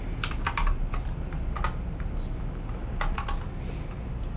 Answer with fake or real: real